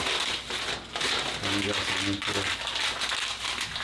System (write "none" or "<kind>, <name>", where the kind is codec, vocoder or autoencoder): none